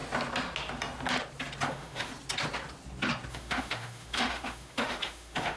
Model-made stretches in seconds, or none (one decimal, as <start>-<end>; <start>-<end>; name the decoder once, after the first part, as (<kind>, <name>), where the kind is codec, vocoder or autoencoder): 1.7-2.1 (autoencoder, DAC-VAE); 3.3-5.6